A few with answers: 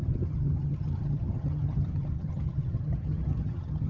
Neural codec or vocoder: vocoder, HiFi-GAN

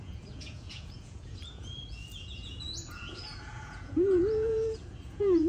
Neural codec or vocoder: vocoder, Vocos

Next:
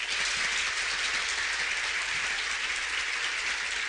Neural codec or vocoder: none